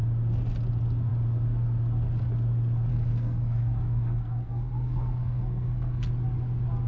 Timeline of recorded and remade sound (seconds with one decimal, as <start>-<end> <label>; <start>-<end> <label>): 0.0-2.9 recorded; 2.9-6.1 remade; 6.1-6.9 recorded